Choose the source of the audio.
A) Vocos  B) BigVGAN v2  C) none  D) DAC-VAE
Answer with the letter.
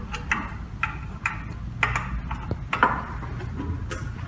C